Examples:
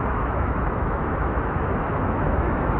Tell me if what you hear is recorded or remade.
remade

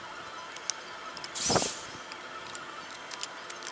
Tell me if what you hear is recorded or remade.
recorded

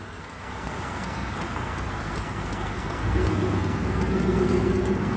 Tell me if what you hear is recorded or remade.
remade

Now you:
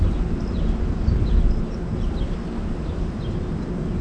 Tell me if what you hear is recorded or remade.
recorded